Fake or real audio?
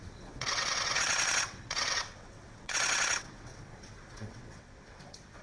fake